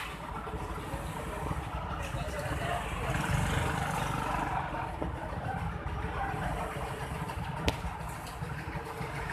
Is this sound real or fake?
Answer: real